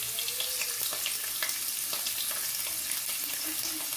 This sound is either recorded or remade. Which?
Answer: recorded